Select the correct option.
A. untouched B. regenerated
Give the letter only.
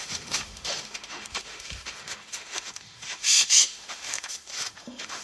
B